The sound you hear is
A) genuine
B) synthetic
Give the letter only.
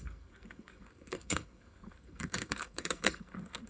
B